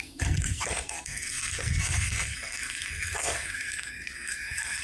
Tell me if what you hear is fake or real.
fake